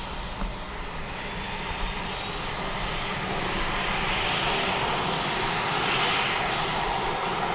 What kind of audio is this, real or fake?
real